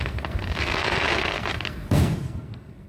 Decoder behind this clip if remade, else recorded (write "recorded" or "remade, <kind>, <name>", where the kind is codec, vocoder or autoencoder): remade, codec, SNAC